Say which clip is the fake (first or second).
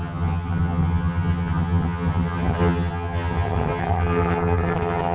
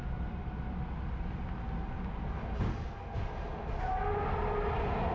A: first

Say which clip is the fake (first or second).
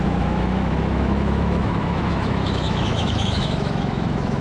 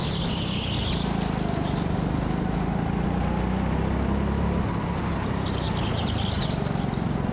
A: first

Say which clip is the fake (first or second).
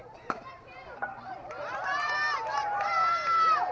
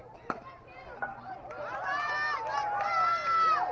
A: first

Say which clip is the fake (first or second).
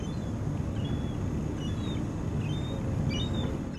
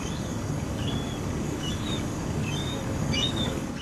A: second